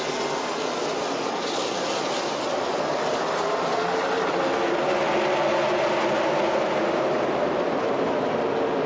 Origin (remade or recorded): recorded